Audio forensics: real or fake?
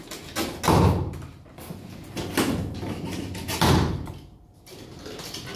real